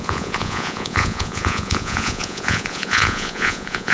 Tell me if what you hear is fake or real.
fake